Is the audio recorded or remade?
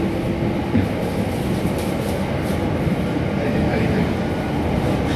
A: recorded